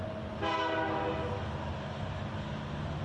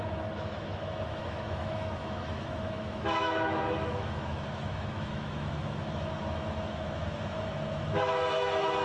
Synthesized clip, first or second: second